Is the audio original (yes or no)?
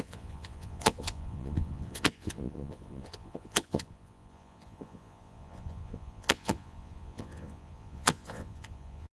no